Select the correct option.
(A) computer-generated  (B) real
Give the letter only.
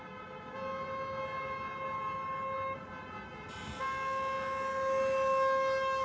B